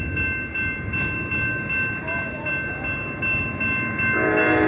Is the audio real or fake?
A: real